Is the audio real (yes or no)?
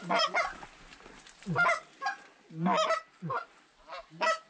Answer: yes